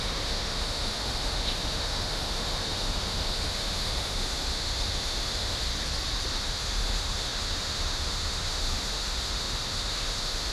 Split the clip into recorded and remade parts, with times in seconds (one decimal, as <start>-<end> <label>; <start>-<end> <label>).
0.0-5.7 remade; 5.7-6.3 recorded; 6.3-10.5 remade